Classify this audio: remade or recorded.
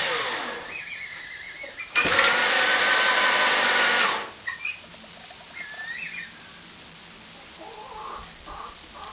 recorded